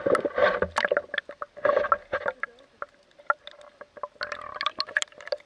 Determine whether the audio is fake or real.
real